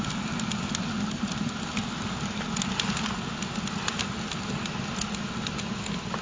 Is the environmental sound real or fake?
real